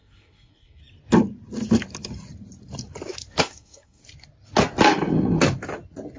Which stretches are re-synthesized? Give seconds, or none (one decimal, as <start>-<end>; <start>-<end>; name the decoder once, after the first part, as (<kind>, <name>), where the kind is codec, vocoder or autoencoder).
0.0-0.8 (codec, SNAC); 3.4-4.0